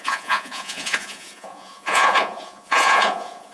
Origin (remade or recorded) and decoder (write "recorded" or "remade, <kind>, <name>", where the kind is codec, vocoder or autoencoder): remade, vocoder, Vocos